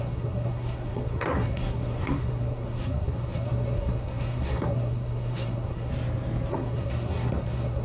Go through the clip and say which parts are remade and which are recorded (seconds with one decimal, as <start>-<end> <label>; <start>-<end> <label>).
0.0-5.9 remade; 5.9-6.5 recorded; 6.5-7.8 remade